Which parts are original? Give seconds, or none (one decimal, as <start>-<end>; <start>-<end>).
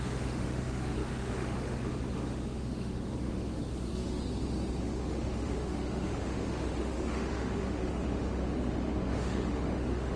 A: 4.2-4.8